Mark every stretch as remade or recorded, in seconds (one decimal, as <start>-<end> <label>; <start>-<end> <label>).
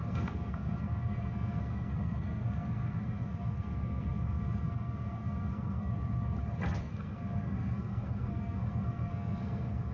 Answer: 0.0-5.9 remade; 5.9-6.8 recorded; 6.8-9.9 remade